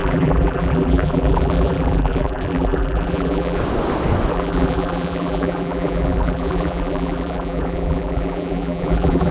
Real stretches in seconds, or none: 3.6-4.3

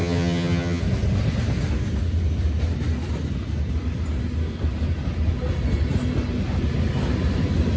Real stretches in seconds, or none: 0.8-7.8

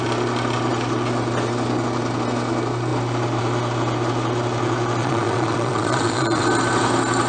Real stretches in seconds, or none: 0.0-5.0; 6.4-7.3

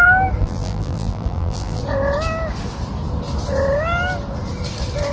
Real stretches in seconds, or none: 0.0-0.4; 1.8-5.1